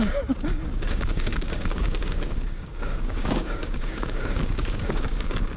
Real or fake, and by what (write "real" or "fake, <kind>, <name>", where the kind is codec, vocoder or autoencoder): fake, codec, DAC